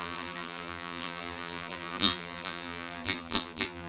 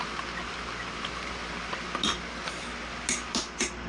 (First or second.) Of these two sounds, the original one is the second